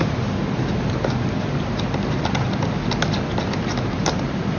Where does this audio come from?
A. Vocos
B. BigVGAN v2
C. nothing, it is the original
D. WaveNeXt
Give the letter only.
C